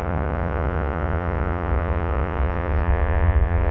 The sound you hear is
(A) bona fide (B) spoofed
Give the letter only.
B